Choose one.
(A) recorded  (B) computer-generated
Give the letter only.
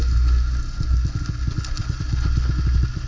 A